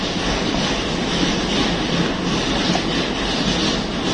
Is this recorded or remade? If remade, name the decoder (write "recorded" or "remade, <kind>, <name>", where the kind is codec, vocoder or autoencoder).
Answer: recorded